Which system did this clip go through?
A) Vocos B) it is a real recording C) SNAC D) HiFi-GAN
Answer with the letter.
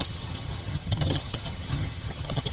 D